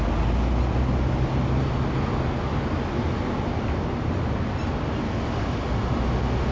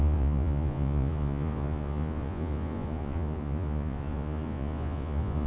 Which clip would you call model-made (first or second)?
second